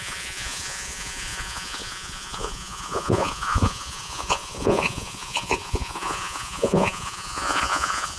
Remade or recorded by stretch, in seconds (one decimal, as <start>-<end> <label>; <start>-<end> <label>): 0.0-8.2 remade